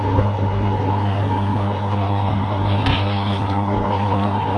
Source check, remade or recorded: remade